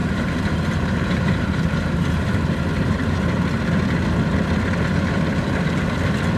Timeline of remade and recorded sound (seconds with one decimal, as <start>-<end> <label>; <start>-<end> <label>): 0.0-3.6 remade; 3.6-6.4 recorded